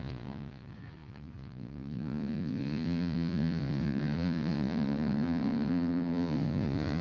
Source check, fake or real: fake